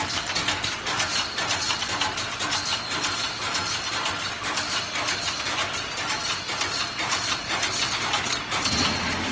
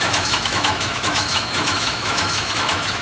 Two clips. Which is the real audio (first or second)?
first